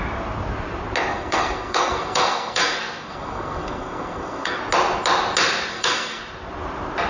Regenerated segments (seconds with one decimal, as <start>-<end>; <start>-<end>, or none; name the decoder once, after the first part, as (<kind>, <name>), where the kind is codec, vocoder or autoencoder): 1.1-4.6 (codec, SNAC); 5.7-6.2